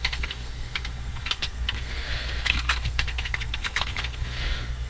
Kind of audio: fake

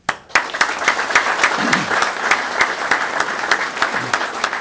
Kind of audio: real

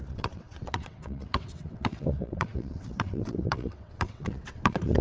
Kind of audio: fake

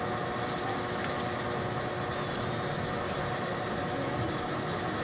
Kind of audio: real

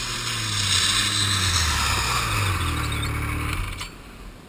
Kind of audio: real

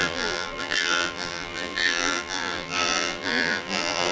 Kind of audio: fake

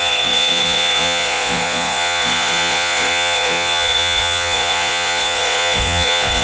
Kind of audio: fake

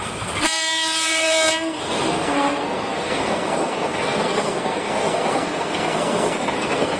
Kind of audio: fake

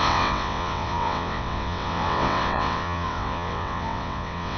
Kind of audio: fake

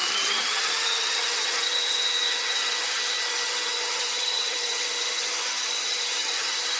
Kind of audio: fake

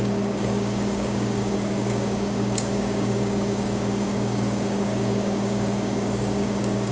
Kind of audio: fake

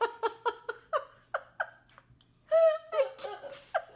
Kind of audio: real